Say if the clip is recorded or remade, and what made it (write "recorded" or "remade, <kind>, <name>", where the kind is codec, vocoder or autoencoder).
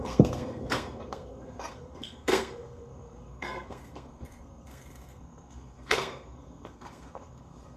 remade, codec, SNAC